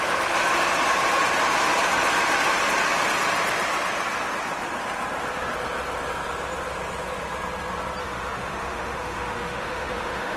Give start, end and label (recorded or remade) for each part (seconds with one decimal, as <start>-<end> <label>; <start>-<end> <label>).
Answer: 0.0-8.0 recorded; 8.0-10.4 remade